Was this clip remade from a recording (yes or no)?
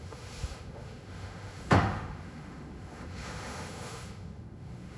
yes